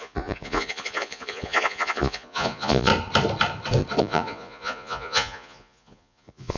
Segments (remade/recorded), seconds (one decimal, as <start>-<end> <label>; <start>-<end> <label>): 0.0-2.9 remade; 2.9-4.0 recorded; 4.0-6.6 remade

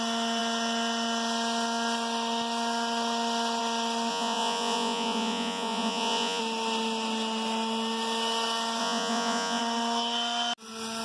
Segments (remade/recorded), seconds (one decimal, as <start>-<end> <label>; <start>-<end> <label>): 0.0-4.1 recorded; 4.1-6.4 remade; 6.4-8.8 recorded; 8.8-9.6 remade; 9.6-11.0 recorded